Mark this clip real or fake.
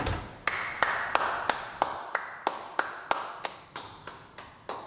real